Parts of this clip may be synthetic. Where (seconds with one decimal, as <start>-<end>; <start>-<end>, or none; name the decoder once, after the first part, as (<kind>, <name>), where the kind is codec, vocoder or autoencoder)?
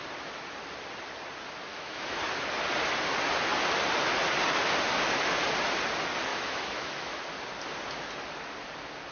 1.7-2.3 (autoencoder, DAC-VAE); 6.3-7.2